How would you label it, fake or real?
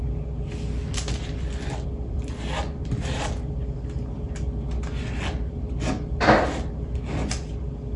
real